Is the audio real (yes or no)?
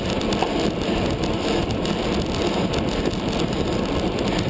yes